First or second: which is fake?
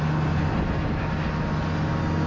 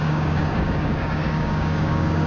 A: second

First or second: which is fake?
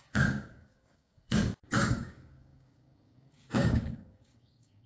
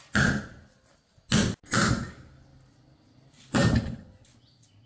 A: first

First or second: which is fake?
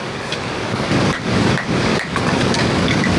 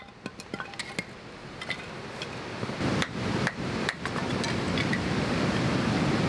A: first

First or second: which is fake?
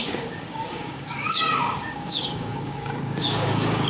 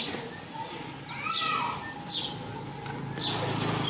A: first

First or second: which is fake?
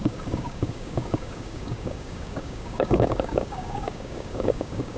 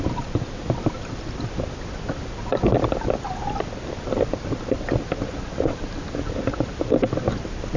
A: first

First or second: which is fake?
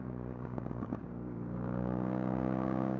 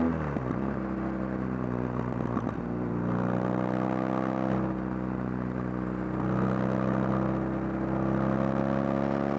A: first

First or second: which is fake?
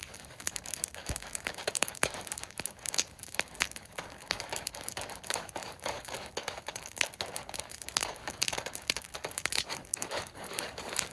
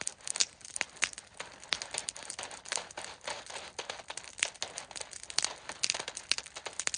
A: first